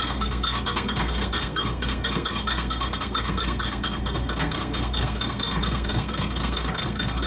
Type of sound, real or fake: fake